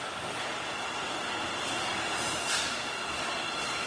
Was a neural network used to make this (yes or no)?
no